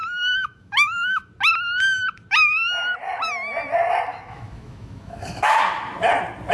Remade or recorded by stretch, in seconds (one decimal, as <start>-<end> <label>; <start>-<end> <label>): 0.0-1.3 remade; 1.3-4.1 recorded; 4.1-5.6 remade; 5.6-6.5 recorded